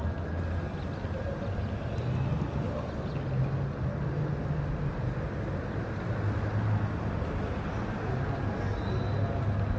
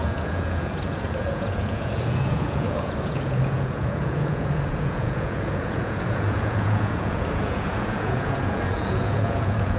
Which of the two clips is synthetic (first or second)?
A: second